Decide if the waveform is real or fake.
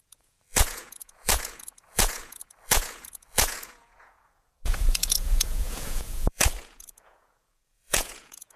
fake